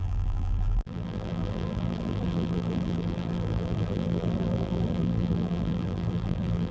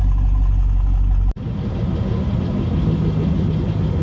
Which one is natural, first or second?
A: second